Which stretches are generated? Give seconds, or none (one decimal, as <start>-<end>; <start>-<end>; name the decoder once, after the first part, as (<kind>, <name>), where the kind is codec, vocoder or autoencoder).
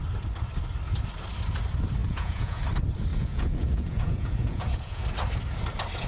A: 2.0-2.6 (vocoder, Vocos); 3.1-5.0